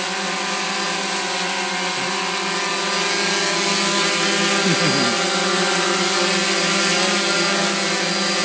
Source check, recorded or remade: recorded